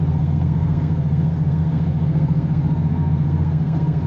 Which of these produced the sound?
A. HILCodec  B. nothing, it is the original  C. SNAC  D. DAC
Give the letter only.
C